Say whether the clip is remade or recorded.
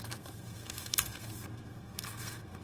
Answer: remade